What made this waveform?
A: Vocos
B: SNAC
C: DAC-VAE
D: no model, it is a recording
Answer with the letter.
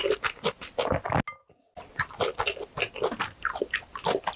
D